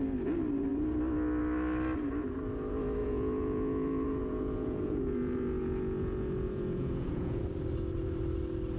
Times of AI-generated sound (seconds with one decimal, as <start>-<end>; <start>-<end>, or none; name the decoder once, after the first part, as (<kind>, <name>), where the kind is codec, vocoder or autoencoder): 3.0-7.4 (vocoder, Vocos)